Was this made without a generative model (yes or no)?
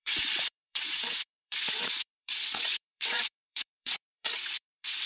no